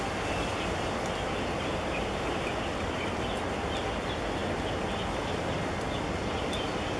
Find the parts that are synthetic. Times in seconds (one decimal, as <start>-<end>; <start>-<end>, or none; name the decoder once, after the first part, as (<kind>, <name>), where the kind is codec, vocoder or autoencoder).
none